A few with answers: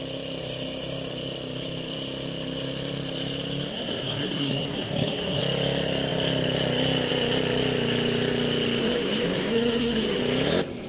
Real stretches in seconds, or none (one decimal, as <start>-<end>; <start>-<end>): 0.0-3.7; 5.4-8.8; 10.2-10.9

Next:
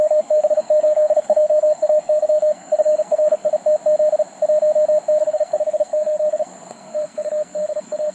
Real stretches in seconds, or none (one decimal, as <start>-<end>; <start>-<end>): 3.5-5.2

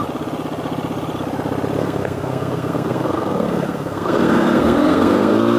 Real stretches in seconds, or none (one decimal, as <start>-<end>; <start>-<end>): 0.0-1.8

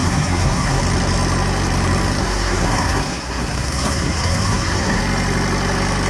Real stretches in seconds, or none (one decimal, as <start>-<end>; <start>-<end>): 0.8-2.2; 5.0-6.1